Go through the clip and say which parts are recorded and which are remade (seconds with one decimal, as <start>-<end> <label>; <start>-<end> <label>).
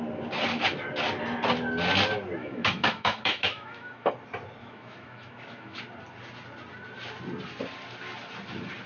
0.0-2.4 recorded; 2.4-4.1 remade; 4.1-4.6 recorded; 4.6-5.8 remade; 5.8-8.9 recorded